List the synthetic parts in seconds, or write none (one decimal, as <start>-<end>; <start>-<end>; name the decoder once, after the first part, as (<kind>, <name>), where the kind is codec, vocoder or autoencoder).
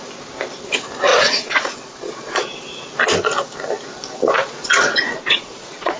1.1-2.6 (vocoder, Vocos); 4.4-6.0